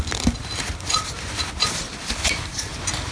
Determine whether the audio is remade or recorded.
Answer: recorded